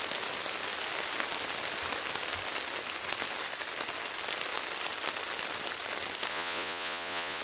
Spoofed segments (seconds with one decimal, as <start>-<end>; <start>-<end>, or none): 6.3-7.4